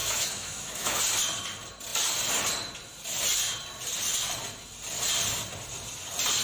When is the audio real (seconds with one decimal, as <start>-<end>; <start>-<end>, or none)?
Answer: 1.0-6.4